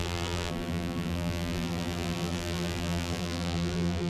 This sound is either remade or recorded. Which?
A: remade